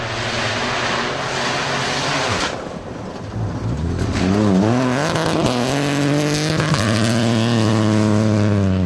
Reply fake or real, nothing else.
real